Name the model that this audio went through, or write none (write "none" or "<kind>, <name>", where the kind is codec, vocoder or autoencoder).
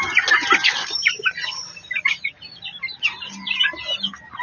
none